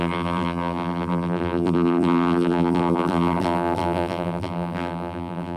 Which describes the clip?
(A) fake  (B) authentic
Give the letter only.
A